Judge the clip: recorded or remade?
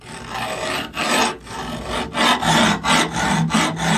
recorded